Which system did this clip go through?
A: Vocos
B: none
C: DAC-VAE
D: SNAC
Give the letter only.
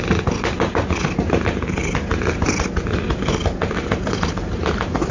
B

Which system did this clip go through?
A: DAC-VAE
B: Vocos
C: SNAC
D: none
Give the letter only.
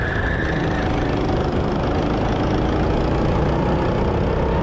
D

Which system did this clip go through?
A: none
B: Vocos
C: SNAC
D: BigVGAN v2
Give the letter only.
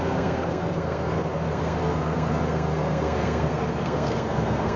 C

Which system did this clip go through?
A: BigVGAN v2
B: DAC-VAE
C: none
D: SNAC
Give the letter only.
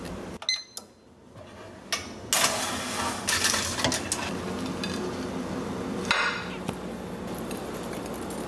C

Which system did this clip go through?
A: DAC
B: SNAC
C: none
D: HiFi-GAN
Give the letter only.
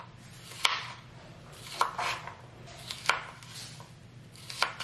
C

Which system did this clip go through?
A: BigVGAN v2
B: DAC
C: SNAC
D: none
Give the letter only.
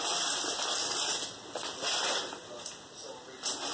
D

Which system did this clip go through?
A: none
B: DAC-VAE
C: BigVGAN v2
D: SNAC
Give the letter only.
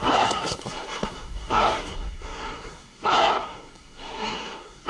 D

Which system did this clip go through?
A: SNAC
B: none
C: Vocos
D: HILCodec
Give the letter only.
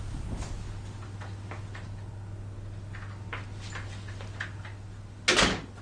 B